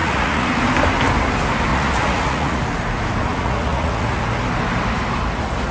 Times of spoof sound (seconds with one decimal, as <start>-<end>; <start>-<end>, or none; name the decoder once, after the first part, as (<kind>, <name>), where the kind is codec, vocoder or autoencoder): 0.0-0.6 (vocoder, Vocos); 1.7-2.6; 3.3-4.2